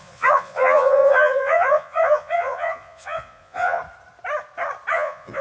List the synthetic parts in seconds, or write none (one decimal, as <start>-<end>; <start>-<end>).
0.0-3.8; 4.9-5.4